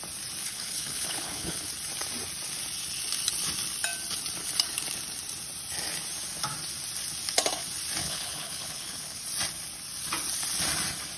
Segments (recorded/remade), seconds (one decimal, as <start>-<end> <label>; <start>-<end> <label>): 0.0-0.4 recorded; 0.4-1.7 remade; 1.7-8.0 recorded; 8.0-9.2 remade; 9.2-11.2 recorded